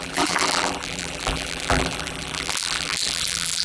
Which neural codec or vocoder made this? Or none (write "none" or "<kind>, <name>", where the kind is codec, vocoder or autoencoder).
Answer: vocoder, BigVGAN v2